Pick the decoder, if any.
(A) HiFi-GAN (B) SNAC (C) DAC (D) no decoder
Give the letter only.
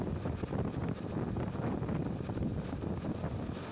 D